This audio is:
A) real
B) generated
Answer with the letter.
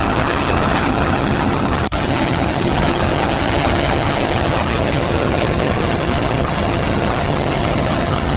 B